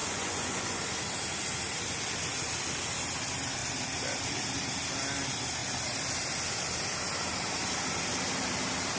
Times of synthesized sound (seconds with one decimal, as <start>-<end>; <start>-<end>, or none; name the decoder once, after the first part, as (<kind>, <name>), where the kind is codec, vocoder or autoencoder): 0.0-0.8 (vocoder, Vocos)